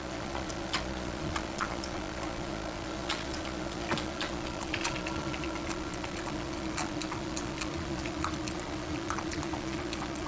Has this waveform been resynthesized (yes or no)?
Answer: yes